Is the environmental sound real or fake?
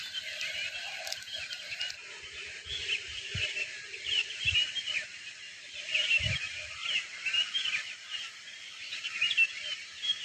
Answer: real